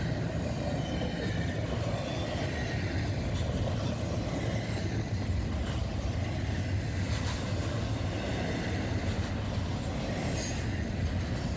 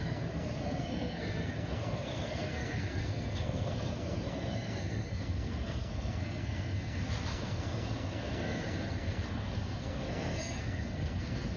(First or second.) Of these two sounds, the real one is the first